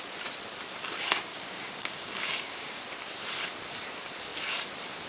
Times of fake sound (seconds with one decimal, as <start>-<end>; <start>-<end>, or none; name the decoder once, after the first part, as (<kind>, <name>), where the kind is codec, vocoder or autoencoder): 1.3-2.8 (codec, DAC)